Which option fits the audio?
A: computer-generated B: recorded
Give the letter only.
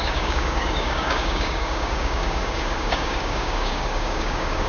A